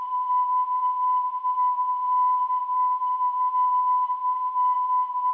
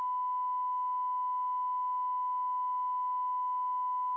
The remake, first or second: first